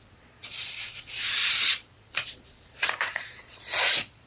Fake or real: fake